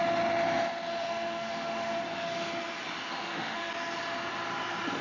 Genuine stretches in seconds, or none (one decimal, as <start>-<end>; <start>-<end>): 0.0-0.9; 2.0-3.1; 3.7-5.0